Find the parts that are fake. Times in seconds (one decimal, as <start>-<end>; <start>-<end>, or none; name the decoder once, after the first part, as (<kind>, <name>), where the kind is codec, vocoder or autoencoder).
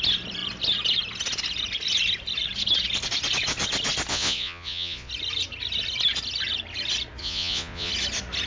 4.1-5.1 (vocoder, Vocos); 7.2-7.9